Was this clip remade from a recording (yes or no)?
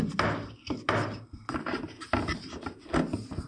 no